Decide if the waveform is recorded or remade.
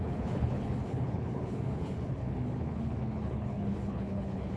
remade